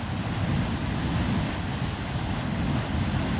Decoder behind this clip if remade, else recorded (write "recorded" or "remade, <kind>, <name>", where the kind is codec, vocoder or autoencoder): recorded